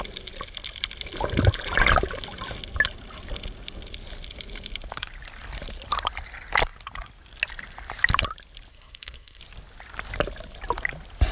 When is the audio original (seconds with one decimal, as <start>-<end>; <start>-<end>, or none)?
0.0-8.7; 9.4-11.3